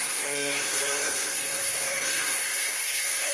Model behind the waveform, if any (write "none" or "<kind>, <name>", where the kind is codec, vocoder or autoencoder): codec, SNAC